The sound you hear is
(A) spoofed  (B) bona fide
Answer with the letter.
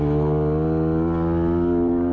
B